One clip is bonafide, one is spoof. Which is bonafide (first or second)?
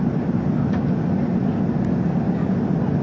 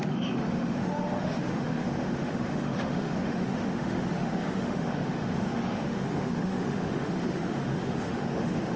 first